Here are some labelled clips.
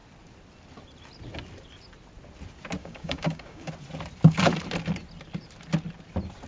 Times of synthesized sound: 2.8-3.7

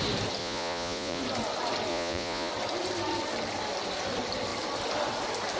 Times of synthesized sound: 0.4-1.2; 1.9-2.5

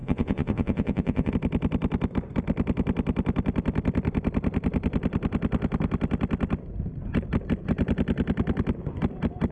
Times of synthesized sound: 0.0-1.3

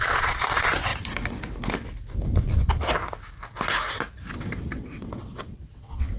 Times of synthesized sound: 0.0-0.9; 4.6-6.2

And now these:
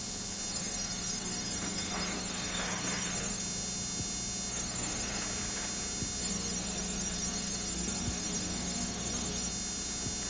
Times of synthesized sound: 0.5-3.4; 4.5-5.2; 6.2-9.5

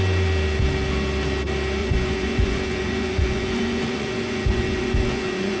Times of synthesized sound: 1.8-5.6

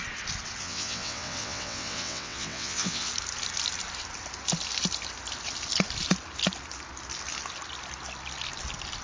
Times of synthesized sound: 0.6-3.1